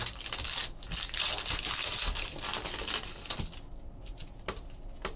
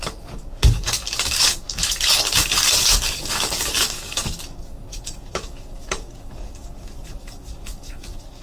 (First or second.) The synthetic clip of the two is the second